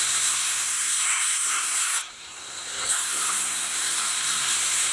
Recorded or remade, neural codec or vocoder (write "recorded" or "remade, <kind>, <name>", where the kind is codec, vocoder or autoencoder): remade, codec, SNAC